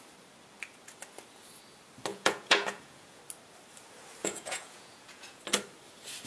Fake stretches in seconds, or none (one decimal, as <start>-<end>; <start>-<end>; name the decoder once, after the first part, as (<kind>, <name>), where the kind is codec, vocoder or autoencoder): 2.1-3.2 (vocoder, Vocos); 4.2-5.4